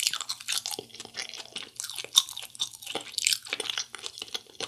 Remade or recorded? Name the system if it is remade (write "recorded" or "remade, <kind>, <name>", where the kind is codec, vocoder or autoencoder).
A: recorded